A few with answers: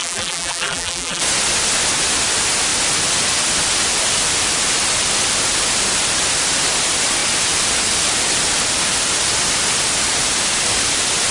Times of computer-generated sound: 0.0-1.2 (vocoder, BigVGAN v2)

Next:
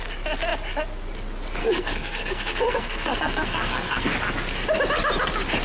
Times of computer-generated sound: 1.6-4.1 (codec, SNAC)

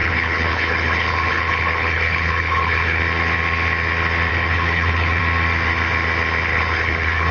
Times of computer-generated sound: 0.0-3.0 (codec, HILCodec); 4.3-5.2; 6.5-7.3

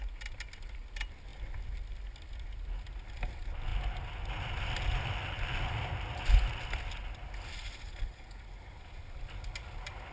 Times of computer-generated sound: none

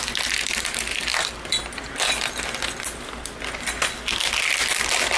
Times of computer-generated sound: none